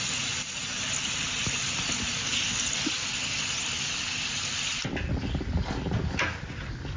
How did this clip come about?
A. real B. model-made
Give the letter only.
A